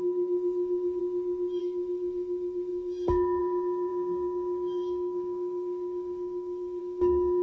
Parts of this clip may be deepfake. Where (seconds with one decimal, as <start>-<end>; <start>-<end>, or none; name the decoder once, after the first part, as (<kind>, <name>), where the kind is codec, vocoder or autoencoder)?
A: 0.0-1.0 (codec, SNAC); 1.6-7.4